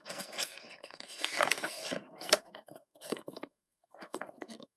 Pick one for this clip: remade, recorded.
remade